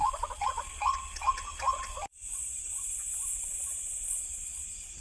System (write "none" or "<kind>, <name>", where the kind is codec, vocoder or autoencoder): vocoder, Vocos